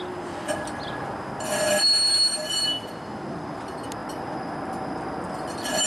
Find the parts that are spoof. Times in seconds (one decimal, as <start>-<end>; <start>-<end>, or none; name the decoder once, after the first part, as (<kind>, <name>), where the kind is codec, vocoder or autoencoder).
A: none